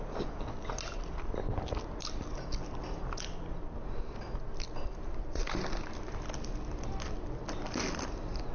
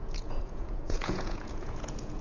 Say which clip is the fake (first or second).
second